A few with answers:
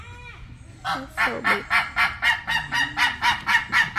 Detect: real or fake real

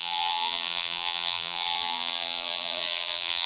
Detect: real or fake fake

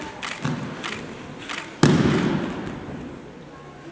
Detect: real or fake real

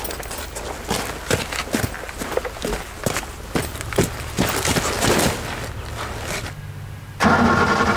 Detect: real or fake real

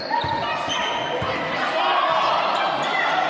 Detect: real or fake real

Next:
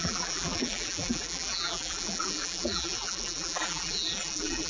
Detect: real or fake fake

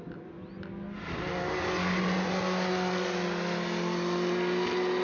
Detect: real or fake real